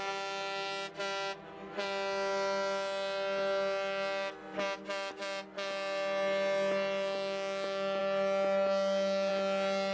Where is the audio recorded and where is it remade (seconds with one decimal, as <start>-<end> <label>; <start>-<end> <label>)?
0.0-9.9 recorded